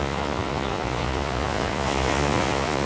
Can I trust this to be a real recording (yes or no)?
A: no